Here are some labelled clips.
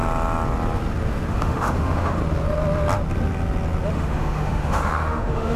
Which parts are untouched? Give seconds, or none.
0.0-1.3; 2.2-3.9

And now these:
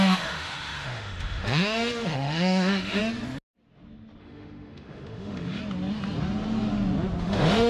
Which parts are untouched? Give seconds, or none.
3.0-4.2; 5.6-7.2

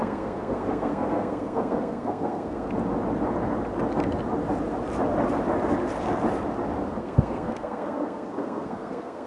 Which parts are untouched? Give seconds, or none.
2.7-7.0

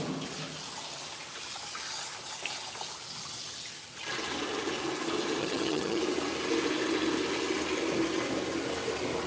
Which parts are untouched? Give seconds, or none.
0.0-5.4; 6.0-9.3